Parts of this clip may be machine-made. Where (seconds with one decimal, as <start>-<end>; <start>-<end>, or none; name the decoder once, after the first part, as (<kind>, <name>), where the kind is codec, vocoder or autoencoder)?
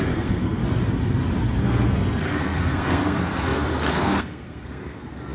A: 0.0-0.6 (codec, SNAC); 1.6-5.3